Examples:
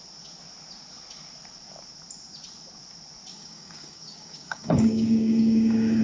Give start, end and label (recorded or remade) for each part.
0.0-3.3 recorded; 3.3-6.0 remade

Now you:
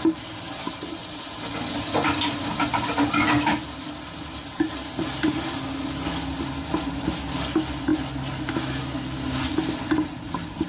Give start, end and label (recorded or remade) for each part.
0.0-10.7 recorded

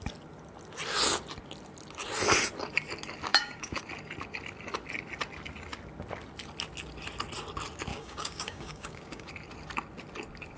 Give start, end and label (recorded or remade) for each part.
0.0-3.3 recorded; 3.3-3.8 remade; 3.8-7.9 recorded; 7.9-9.3 remade; 9.3-10.6 recorded